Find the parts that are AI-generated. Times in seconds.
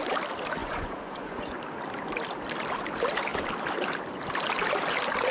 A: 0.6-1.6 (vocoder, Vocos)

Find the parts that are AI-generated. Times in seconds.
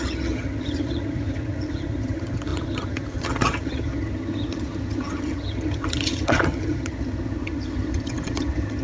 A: 0.0-8.8 (vocoder, HiFi-GAN)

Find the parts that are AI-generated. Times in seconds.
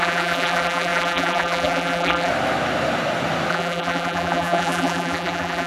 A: 0.0-2.3 (vocoder, BigVGAN v2); 3.5-5.7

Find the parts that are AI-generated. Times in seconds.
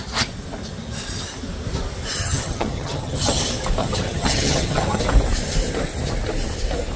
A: 2.2-3.4 (vocoder, HiFi-GAN); 3.8-5.0